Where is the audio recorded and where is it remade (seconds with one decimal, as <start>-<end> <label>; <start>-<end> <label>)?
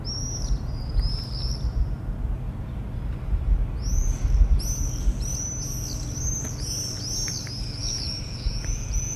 0.0-7.8 recorded; 7.8-9.2 remade